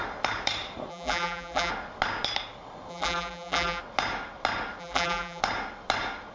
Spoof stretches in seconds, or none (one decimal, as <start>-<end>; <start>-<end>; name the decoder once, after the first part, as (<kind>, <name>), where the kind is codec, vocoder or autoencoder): 0.9-1.7 (vocoder, BigVGAN v2); 2.9-3.8; 4.8-5.4